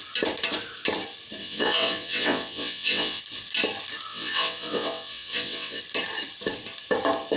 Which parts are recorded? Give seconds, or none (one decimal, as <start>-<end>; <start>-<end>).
0.0-1.4; 3.2-4.1; 5.8-7.4